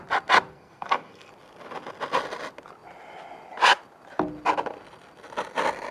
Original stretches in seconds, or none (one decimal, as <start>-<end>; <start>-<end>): 0.0-0.5; 1.3-5.9